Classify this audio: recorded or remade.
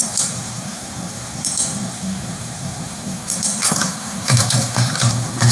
remade